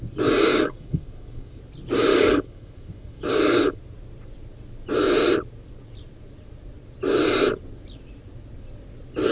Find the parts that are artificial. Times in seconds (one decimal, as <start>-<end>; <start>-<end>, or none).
0.5-1.6; 2.1-3.8